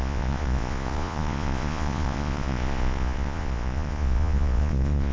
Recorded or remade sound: remade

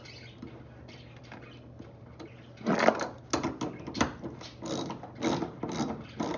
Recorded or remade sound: recorded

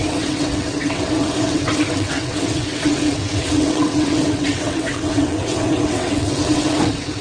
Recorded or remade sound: remade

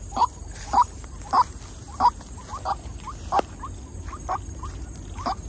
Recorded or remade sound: recorded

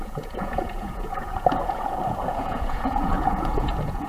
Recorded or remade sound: remade